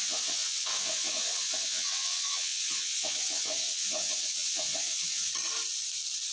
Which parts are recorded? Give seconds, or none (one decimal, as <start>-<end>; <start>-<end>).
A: 5.3-6.3